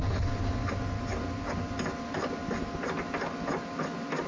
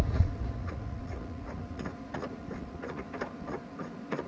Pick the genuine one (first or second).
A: first